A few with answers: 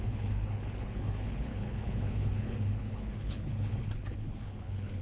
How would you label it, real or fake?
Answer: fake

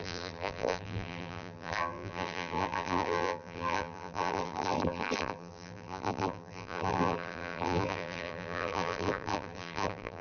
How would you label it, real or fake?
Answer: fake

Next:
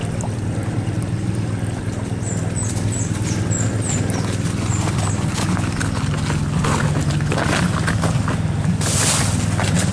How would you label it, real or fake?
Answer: real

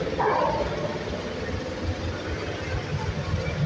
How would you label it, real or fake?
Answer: real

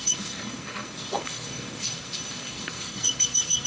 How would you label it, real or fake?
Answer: fake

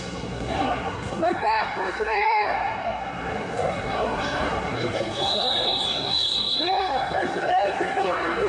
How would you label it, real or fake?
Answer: fake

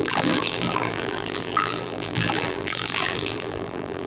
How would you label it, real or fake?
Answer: fake